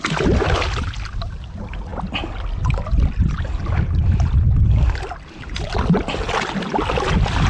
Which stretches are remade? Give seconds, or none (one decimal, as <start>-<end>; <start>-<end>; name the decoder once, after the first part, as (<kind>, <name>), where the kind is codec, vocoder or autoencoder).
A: none